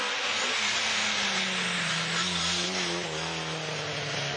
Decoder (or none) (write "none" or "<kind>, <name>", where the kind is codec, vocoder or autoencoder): none